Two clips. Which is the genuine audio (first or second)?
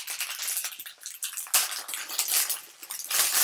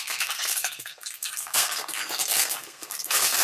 first